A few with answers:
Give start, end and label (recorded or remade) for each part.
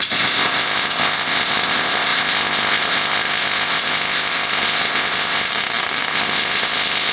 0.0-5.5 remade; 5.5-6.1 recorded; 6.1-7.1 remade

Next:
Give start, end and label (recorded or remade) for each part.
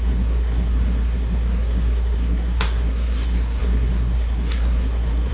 0.0-5.3 remade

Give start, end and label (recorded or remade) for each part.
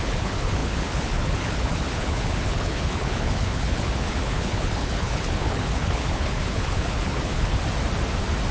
0.0-7.6 remade; 7.6-8.5 recorded